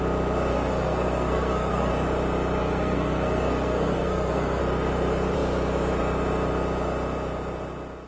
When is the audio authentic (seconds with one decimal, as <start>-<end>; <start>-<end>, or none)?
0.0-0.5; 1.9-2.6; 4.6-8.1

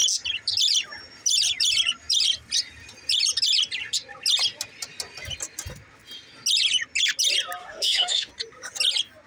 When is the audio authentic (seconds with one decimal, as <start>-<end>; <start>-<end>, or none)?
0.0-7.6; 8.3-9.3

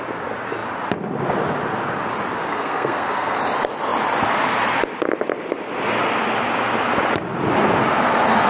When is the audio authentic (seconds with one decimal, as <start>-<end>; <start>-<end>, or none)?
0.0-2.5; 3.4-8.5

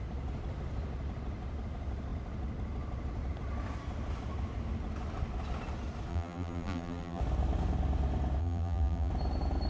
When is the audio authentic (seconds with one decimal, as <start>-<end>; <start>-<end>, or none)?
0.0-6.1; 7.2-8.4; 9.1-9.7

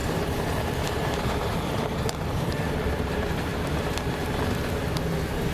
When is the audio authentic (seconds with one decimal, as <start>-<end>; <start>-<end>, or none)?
3.1-3.5; 4.0-5.5